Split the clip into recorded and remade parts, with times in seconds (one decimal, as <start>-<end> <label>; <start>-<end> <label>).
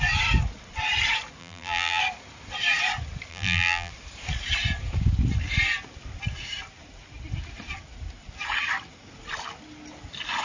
0.0-1.4 recorded; 1.4-2.0 remade; 2.0-3.3 recorded; 3.3-3.9 remade; 3.9-10.4 recorded